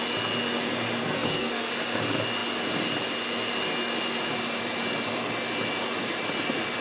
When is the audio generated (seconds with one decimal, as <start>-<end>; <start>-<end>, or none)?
1.0-1.7